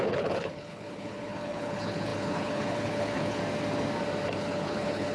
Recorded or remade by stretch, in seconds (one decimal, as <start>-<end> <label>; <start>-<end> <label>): 0.0-3.4 remade; 3.4-4.4 recorded; 4.4-5.1 remade